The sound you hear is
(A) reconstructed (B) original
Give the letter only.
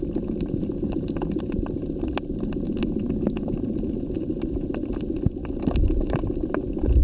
B